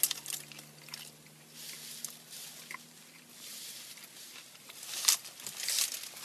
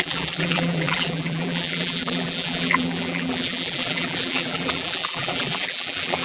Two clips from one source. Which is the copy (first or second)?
second